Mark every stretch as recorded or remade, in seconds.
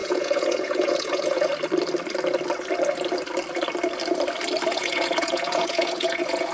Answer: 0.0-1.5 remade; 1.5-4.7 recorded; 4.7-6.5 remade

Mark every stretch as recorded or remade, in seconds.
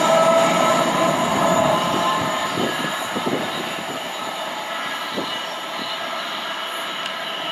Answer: 0.0-0.7 recorded; 0.7-4.6 remade; 4.6-7.5 recorded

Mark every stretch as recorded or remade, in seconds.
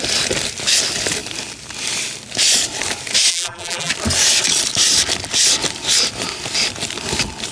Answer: 0.0-3.3 recorded; 3.3-3.9 remade; 3.9-7.5 recorded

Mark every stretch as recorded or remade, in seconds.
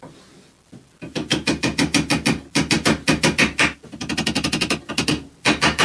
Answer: 0.0-5.8 recorded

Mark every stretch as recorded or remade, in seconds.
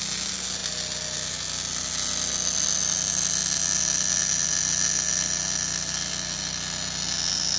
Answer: 0.0-7.6 recorded